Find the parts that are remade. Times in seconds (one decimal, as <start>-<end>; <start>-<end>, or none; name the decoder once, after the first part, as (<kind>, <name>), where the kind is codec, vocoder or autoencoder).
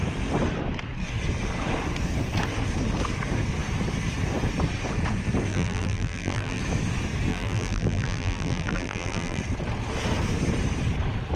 5.5-6.6 (vocoder, BigVGAN v2); 7.3-9.4